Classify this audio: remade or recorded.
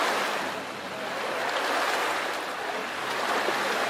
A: recorded